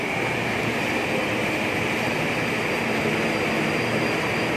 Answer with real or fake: real